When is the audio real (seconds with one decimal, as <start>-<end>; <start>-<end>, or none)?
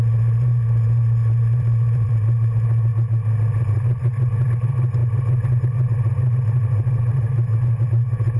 2.9-3.6